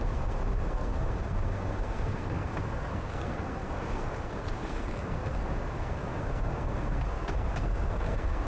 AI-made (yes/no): yes